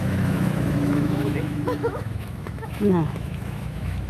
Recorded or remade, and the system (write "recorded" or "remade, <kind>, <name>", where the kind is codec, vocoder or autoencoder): remade, autoencoder, DAC-VAE